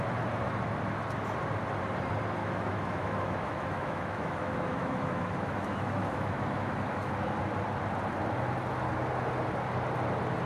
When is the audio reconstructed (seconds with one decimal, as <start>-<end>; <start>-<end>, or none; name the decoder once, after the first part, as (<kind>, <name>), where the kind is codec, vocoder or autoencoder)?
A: 2.4-7.1 (autoencoder, DAC-VAE)